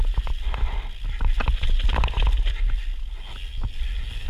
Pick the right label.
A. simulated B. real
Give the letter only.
B